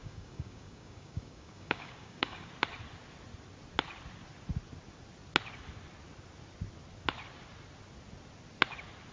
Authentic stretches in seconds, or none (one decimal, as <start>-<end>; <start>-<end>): 2.5-9.1